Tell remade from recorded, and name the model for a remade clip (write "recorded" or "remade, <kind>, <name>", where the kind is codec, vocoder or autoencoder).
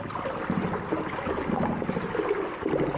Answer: recorded